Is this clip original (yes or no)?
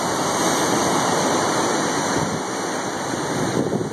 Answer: yes